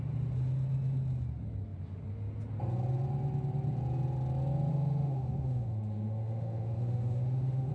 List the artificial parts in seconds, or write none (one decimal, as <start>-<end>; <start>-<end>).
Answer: 4.7-7.7